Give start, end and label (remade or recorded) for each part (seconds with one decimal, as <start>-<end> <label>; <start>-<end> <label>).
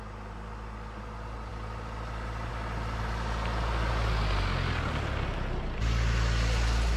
0.0-7.0 recorded